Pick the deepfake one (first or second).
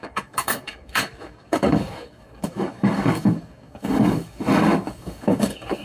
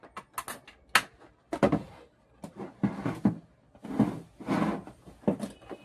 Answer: first